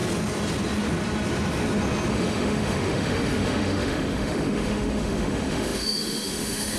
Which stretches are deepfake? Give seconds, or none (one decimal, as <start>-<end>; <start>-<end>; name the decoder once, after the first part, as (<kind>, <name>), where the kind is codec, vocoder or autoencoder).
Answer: 2.1-6.8 (autoencoder, DAC-VAE)